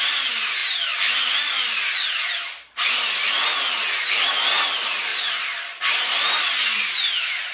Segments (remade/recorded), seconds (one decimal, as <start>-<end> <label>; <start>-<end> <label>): 0.0-7.5 recorded